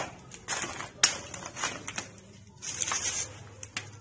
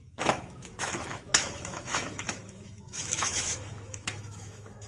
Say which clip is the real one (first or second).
first